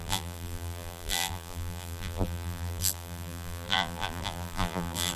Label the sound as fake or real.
fake